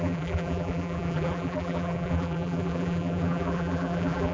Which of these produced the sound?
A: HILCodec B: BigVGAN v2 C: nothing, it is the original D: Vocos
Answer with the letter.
B